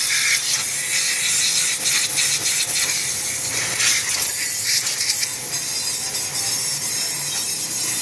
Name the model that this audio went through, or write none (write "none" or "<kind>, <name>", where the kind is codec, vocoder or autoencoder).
none